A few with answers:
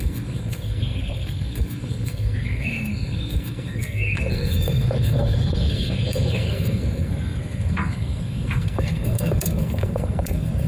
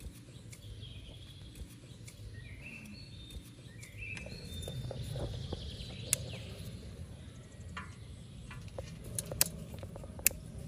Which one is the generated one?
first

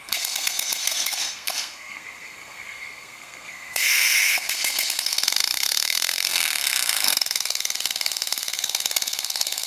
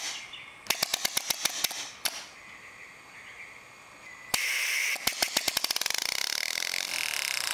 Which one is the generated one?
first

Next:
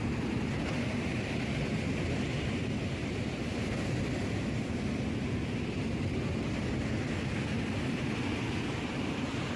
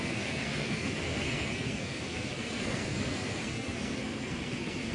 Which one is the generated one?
second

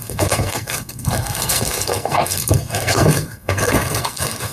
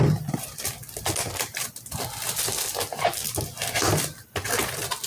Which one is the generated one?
first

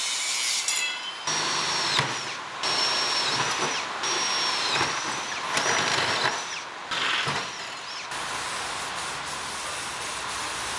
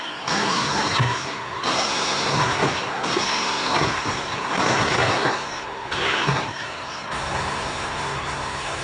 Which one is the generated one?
second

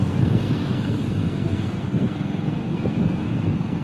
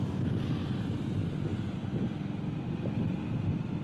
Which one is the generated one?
first